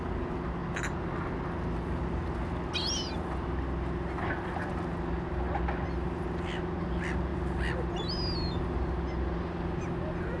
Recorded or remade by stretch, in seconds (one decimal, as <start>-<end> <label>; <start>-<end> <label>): 0.0-10.4 recorded